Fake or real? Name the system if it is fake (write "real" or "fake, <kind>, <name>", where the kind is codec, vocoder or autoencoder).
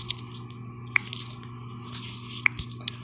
real